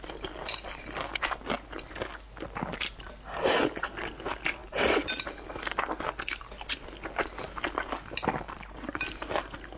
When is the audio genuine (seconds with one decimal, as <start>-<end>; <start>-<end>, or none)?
0.0-9.8